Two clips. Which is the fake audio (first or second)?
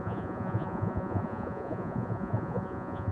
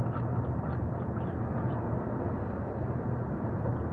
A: first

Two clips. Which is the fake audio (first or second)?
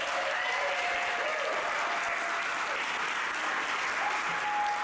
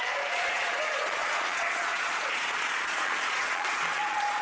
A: second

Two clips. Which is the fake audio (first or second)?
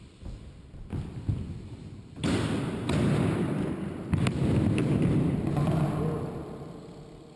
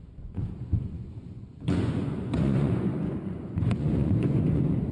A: second